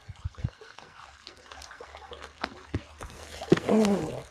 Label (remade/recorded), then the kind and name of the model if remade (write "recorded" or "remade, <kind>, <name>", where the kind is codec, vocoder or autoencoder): remade, codec, SNAC